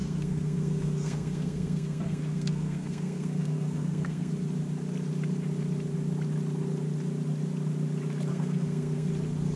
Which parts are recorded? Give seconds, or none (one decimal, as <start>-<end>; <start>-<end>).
4.3-8.3; 9.1-9.6